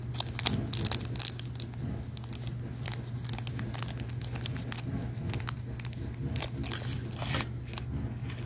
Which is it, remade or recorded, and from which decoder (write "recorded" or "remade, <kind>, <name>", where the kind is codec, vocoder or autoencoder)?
recorded